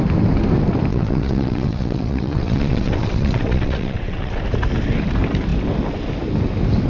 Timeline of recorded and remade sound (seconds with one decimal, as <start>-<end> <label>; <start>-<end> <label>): 0.0-0.9 recorded; 0.9-4.4 remade; 4.4-6.9 recorded